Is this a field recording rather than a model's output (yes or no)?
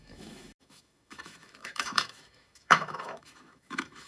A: no